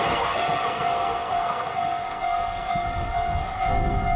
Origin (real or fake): fake